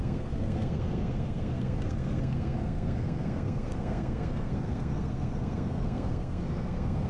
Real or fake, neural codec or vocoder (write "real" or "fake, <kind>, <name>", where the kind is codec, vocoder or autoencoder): fake, codec, SNAC